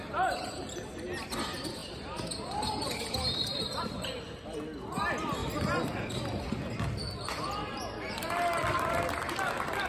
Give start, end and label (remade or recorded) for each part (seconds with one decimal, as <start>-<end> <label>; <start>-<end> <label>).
0.0-1.8 recorded; 1.8-3.8 remade; 3.8-9.9 recorded